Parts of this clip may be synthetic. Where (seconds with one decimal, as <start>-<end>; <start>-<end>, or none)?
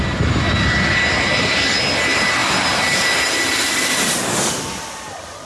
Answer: 2.4-4.5